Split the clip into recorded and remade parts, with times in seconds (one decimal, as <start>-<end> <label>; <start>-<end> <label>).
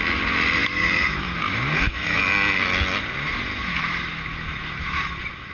0.0-0.6 recorded; 0.6-2.2 remade; 2.2-3.5 recorded; 3.5-5.5 remade